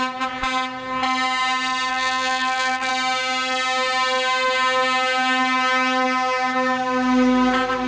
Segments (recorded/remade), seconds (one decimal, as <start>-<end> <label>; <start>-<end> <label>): 0.0-1.9 recorded; 1.9-2.9 remade; 2.9-7.9 recorded